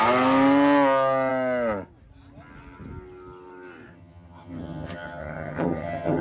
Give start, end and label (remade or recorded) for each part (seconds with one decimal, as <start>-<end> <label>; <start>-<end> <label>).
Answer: 0.0-3.9 recorded; 3.9-6.2 remade

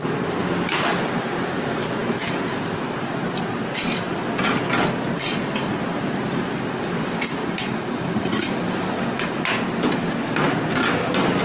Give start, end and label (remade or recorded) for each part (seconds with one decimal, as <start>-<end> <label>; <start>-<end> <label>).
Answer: 0.0-11.4 recorded